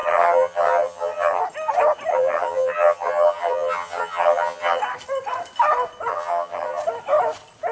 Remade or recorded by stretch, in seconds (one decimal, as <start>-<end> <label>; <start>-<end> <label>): 0.0-1.4 remade; 1.4-2.1 recorded; 2.1-4.8 remade; 4.8-6.1 recorded; 6.1-6.8 remade; 6.8-7.7 recorded